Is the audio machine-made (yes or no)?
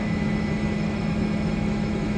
yes